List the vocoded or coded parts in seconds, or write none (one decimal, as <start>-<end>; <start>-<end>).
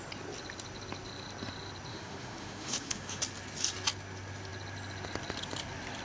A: 1.9-3.2